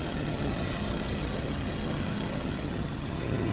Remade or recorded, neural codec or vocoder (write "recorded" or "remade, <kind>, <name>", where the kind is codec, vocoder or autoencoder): remade, vocoder, HiFi-GAN